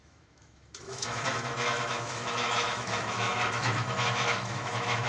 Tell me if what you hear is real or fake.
fake